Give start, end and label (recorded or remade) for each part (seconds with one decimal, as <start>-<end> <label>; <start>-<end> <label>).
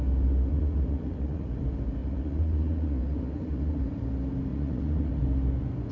0.0-0.5 recorded; 0.5-1.6 remade; 1.6-2.0 recorded; 2.0-3.8 remade; 3.8-4.5 recorded; 4.5-5.2 remade; 5.2-5.9 recorded